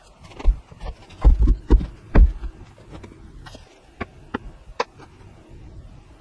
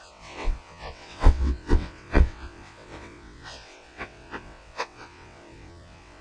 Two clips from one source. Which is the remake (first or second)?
second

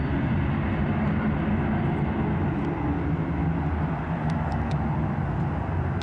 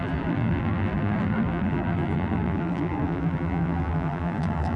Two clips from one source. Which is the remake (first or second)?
second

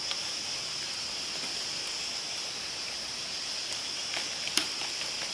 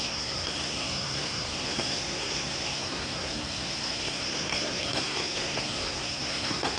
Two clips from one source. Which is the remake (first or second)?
second